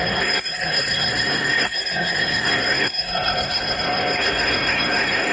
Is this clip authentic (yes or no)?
no